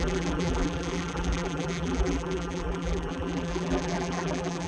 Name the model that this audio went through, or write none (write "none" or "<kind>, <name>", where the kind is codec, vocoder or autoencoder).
vocoder, BigVGAN v2